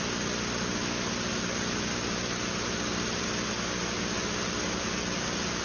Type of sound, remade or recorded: recorded